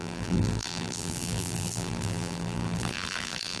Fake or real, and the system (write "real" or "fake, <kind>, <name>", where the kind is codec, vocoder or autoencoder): fake, vocoder, BigVGAN v2